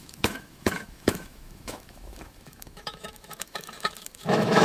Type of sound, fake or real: fake